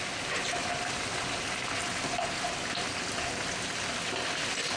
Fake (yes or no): no